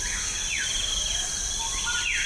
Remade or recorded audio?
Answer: recorded